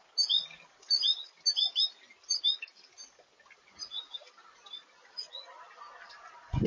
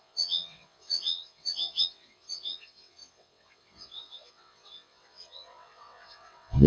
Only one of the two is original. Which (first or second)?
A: first